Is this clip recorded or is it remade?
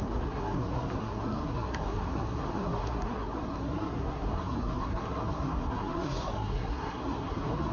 remade